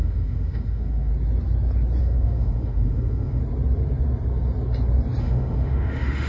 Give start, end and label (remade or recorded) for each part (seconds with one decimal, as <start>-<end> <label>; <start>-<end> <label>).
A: 0.0-1.1 remade; 1.1-2.0 recorded; 2.0-3.4 remade; 3.4-5.2 recorded; 5.2-6.3 remade